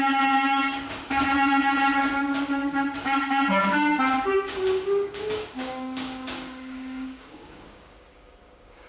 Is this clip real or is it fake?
fake